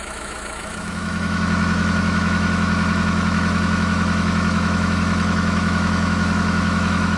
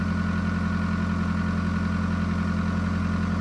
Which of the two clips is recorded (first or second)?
second